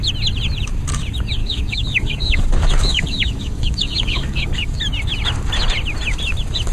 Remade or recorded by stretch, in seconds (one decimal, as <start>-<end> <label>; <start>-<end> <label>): 0.0-1.4 recorded; 1.4-4.8 remade; 4.8-6.7 recorded